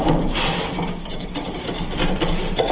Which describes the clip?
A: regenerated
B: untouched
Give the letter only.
A